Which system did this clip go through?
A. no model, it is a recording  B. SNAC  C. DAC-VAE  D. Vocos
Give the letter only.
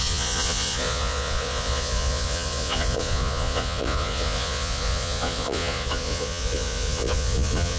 D